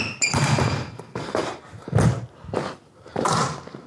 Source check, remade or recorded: recorded